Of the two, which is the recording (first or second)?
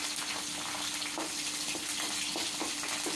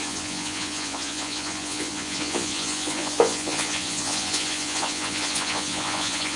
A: first